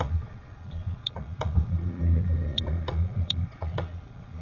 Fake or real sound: fake